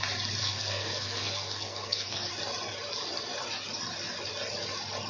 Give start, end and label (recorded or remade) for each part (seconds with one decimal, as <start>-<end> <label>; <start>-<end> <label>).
0.0-0.4 recorded; 0.4-2.3 remade; 2.3-5.1 recorded